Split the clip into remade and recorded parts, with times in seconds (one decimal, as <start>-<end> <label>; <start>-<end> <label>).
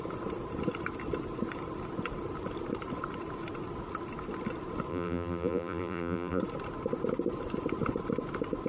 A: 0.0-4.9 recorded; 4.9-6.4 remade; 6.4-8.7 recorded